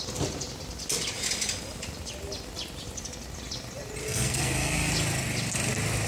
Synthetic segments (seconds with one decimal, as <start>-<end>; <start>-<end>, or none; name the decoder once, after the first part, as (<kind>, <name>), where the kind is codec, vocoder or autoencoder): 4.0-4.9 (codec, SNAC)